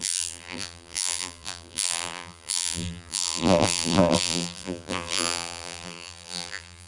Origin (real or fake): fake